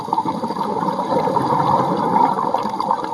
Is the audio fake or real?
real